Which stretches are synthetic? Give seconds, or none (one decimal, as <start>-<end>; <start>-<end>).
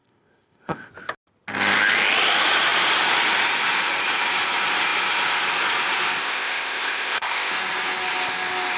0.0-0.9; 6.2-7.5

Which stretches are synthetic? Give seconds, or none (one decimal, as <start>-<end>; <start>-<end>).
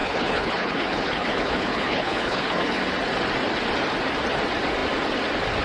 0.0-2.8